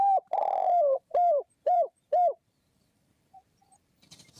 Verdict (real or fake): fake